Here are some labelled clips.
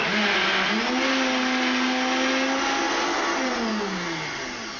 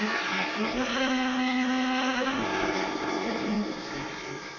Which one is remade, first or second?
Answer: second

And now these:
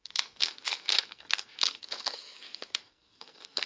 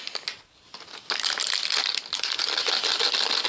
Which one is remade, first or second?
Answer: first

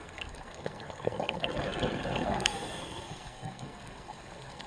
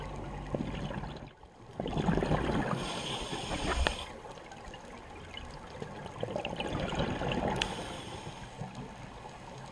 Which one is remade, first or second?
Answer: first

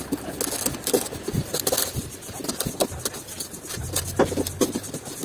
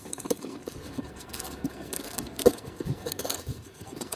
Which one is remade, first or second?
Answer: second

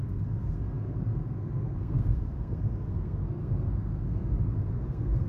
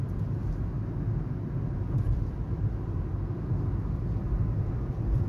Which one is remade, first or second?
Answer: first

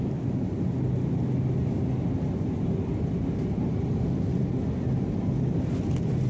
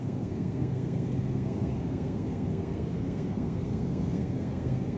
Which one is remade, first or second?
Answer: second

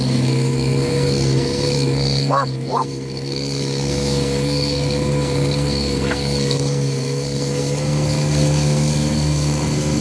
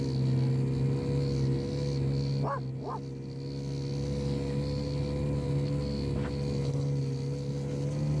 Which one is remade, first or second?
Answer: first